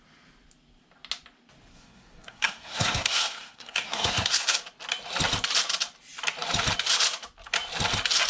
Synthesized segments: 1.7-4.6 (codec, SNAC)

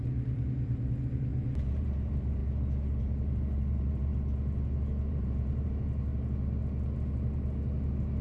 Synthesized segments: 0.0-2.4 (vocoder, BigVGAN v2); 3.0-4.1; 5.1-6.1

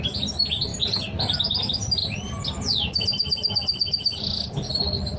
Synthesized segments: 0.0-0.7 (vocoder, BigVGAN v2); 1.6-2.0; 4.7-5.2